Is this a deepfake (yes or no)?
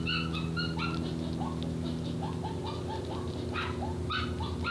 no